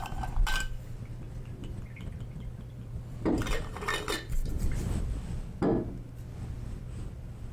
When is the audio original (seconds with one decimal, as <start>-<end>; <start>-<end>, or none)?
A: 0.0-1.6; 4.9-7.5